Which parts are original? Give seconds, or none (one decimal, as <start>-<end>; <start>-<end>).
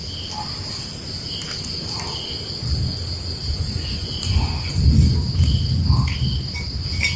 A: 0.0-3.5; 4.8-7.2